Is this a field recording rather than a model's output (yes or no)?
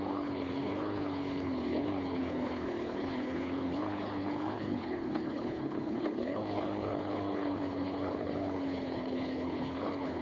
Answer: no